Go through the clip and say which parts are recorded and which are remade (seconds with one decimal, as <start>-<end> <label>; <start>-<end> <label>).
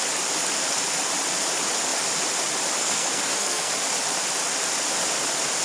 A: 0.0-2.8 recorded; 2.8-3.7 remade; 3.7-5.6 recorded